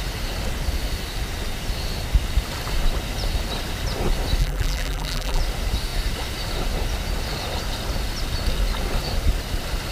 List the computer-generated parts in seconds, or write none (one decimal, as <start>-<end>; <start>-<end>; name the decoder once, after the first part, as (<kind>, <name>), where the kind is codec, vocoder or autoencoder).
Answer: 4.4-5.4 (vocoder, BigVGAN v2)